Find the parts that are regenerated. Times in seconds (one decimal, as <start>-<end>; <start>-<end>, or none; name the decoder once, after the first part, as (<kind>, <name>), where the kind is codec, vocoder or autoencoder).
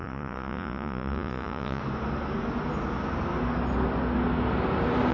0.0-1.8 (vocoder, Vocos)